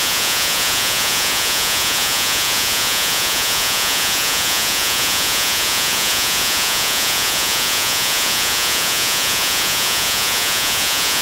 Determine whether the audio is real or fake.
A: fake